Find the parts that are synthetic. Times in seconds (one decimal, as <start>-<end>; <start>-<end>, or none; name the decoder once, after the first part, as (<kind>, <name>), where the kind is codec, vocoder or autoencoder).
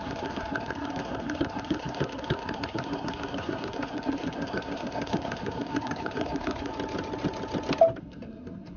0.0-6.7 (codec, SNAC); 8.0-8.8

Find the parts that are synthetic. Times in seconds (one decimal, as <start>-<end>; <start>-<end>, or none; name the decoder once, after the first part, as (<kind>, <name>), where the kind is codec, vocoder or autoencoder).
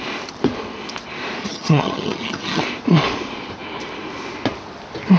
1.4-2.6 (vocoder, HiFi-GAN)